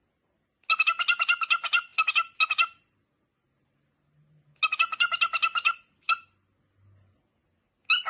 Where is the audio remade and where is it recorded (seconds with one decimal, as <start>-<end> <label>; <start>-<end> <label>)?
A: 0.0-8.1 recorded